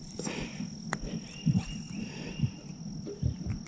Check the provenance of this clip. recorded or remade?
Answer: recorded